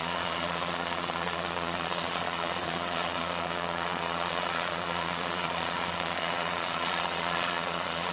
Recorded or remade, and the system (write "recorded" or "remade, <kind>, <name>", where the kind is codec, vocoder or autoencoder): remade, vocoder, Vocos